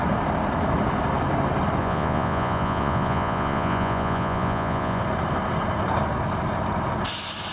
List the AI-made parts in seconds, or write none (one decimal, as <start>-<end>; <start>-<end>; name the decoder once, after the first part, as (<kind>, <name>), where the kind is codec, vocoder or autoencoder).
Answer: 1.8-5.0 (vocoder, Vocos)